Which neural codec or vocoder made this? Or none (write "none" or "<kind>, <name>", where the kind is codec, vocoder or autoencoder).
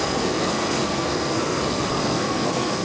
codec, SNAC